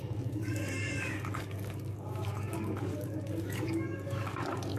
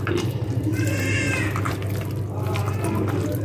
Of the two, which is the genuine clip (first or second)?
second